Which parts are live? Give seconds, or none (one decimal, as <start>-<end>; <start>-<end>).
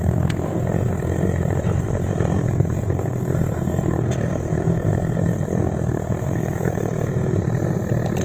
7.4-8.2